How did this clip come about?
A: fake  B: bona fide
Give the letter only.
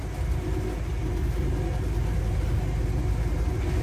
B